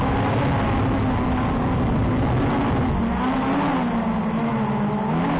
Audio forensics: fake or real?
real